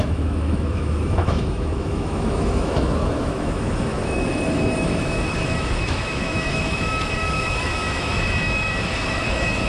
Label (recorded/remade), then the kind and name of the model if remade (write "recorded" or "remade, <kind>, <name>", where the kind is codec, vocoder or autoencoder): remade, autoencoder, DAC-VAE